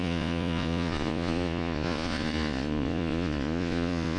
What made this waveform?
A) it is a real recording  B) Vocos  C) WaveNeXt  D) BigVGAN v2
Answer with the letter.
B